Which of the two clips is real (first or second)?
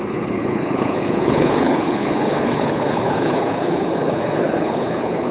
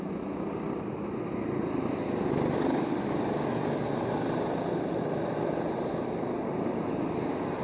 second